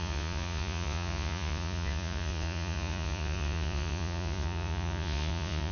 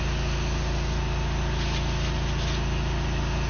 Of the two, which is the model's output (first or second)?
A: first